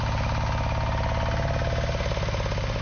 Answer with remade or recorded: recorded